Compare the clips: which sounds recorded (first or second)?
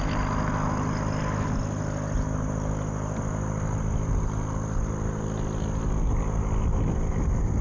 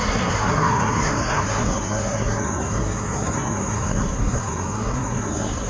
first